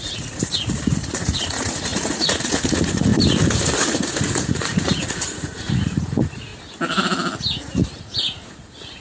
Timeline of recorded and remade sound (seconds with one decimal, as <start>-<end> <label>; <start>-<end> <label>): 0.0-3.1 remade; 3.1-3.9 recorded; 3.9-6.5 remade; 6.5-8.0 recorded; 8.0-9.0 remade